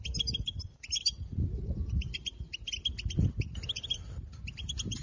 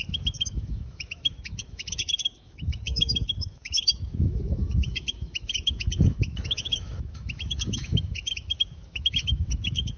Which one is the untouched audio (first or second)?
first